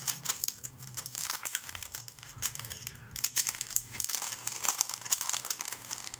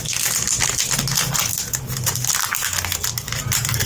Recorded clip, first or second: second